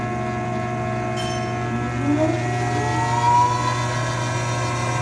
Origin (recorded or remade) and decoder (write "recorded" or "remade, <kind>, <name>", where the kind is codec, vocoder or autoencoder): recorded